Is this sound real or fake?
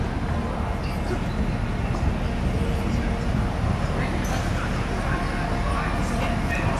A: real